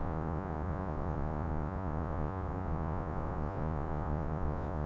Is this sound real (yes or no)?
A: no